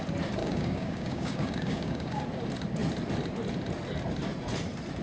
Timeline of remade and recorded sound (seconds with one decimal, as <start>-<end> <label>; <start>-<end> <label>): 0.0-0.4 recorded; 0.4-2.2 remade; 2.2-5.0 recorded